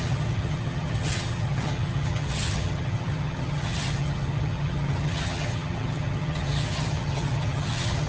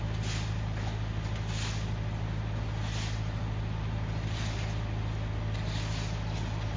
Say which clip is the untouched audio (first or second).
second